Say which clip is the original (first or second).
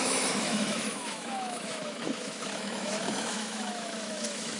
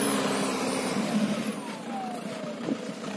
second